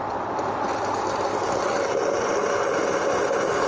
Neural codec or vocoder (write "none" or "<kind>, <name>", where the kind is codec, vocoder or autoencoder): none